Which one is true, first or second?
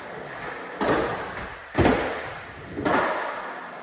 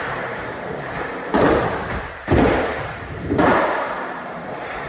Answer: first